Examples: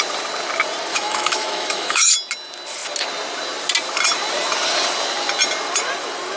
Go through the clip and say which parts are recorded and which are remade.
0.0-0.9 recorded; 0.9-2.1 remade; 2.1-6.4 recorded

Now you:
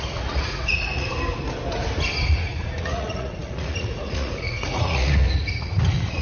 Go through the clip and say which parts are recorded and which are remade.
0.0-1.1 remade; 1.1-2.3 recorded; 2.3-6.2 remade

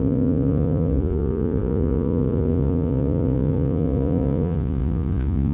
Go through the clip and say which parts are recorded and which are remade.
0.0-5.5 remade

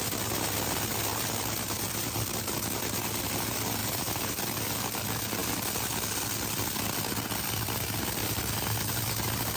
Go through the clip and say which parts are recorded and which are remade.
0.0-1.1 recorded; 1.1-2.8 remade; 2.8-3.8 recorded; 3.8-4.4 remade; 4.4-9.6 recorded